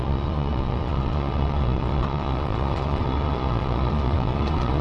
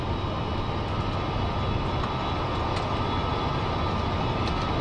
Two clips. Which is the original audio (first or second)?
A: second